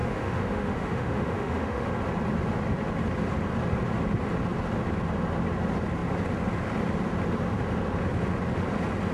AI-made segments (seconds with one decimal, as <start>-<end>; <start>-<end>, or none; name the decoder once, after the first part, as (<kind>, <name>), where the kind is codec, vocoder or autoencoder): 0.0-1.9 (autoencoder, DAC-VAE)